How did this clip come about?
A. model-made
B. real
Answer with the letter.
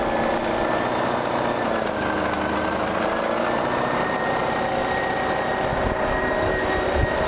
B